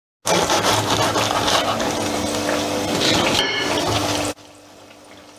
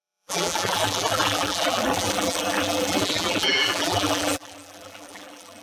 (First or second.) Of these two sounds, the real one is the first